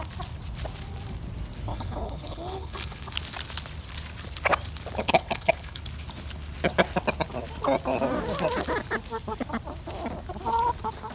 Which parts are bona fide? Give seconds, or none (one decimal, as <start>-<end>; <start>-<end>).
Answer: 0.0-1.7; 3.1-5.0; 5.8-11.1